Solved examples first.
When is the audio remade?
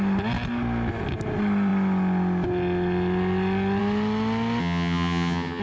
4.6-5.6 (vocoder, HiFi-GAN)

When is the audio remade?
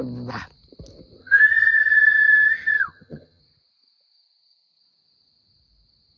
1.2-3.4 (vocoder, HiFi-GAN)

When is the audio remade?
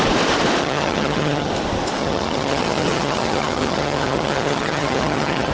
0.6-1.5 (vocoder, HiFi-GAN); 2.0-5.5